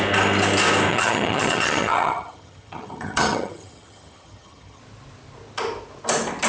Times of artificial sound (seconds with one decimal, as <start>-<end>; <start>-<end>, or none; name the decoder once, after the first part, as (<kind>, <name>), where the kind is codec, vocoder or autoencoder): 0.9-4.8 (vocoder, HiFi-GAN)